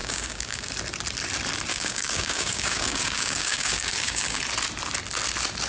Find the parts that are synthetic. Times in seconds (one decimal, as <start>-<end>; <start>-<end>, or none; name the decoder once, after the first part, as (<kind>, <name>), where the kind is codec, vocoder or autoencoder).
0.0-0.7 (codec, DAC); 1.7-4.4